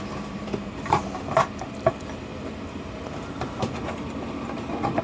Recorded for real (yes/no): no